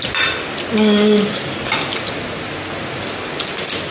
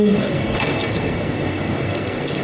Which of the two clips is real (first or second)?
first